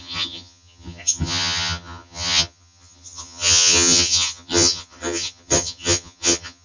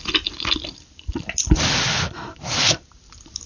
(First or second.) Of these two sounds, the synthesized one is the first